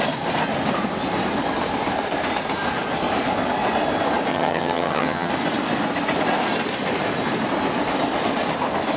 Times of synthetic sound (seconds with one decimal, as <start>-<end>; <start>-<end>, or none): 4.3-5.3